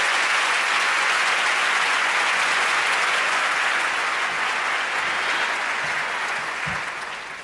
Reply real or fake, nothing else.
fake